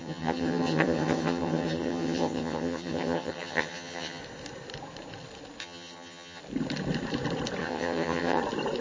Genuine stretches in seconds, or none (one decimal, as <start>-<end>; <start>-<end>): 4.2-5.6; 6.4-7.6; 8.4-8.8

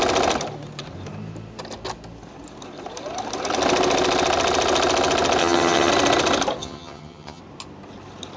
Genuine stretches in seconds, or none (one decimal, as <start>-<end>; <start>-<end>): 0.0-5.4; 5.9-6.6; 7.4-8.4

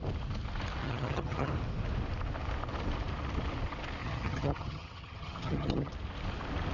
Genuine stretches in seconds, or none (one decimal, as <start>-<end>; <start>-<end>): 0.0-0.8; 1.5-4.0; 5.9-6.7

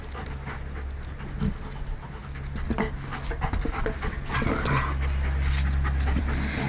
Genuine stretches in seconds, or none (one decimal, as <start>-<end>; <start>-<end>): 0.0-6.7

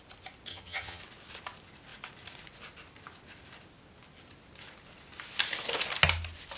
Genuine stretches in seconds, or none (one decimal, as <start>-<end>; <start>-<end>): 0.0-0.5; 1.0-6.6